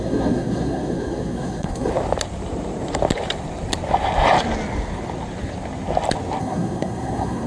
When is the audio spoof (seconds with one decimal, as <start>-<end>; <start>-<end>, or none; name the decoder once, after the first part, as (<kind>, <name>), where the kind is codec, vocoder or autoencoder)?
0.0-1.9 (codec, SNAC); 6.4-7.5

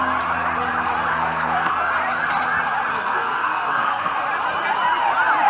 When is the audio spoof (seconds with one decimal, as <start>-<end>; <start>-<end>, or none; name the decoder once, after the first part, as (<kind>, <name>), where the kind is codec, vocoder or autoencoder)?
1.1-1.7 (codec, SNAC); 2.9-4.1